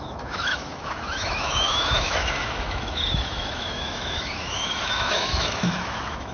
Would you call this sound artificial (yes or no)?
yes